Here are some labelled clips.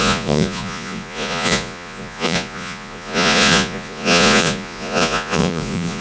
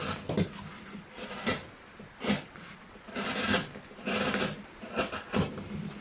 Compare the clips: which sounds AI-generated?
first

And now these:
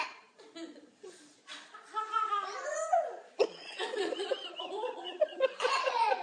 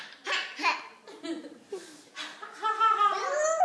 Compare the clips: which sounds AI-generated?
first